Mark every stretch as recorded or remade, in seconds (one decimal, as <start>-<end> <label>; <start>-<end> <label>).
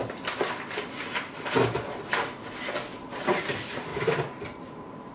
0.0-3.1 recorded; 3.1-5.1 remade